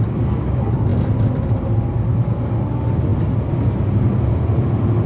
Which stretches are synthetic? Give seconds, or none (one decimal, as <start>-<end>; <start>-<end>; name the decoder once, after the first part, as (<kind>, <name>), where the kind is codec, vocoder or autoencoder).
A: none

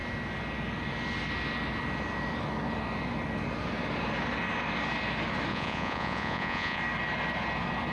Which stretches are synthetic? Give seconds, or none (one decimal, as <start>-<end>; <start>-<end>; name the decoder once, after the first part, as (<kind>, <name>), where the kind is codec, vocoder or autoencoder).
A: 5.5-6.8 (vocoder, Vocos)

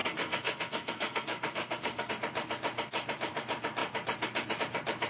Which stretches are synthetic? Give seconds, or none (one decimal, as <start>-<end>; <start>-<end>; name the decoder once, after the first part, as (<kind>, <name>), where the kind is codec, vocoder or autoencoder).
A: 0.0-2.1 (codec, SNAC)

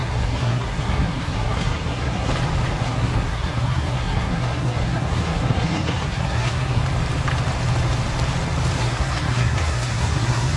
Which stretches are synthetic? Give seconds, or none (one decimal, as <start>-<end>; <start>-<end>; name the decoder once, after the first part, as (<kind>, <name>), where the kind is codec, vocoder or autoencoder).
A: 0.0-2.3 (codec, SNAC); 2.8-6.8; 8.8-10.6

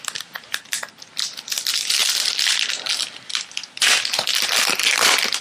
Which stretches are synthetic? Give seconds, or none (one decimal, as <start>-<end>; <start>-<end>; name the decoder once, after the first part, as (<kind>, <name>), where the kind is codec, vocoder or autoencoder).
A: none

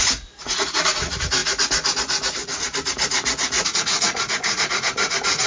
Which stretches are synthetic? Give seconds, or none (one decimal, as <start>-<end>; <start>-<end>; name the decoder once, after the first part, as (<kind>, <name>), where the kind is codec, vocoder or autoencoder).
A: 0.0-5.5 (vocoder, Vocos)

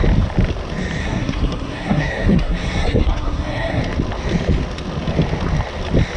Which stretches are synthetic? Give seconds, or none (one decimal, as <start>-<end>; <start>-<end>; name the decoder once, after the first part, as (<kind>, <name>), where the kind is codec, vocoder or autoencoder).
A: 1.0-3.8 (codec, SNAC)

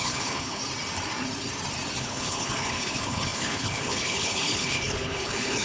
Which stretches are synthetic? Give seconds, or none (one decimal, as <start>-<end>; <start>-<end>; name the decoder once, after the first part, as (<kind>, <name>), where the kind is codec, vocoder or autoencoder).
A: 0.0-0.6 (codec, HILCodec); 2.0-5.6